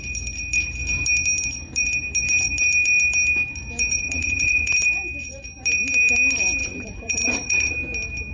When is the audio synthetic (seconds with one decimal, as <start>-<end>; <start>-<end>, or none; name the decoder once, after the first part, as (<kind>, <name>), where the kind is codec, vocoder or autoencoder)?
3.9-4.7 (vocoder, Vocos); 6.6-7.7